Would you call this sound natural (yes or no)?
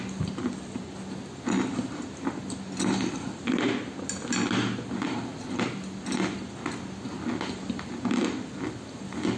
yes